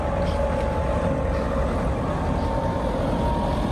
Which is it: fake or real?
real